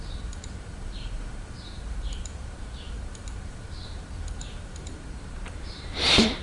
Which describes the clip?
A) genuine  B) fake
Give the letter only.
B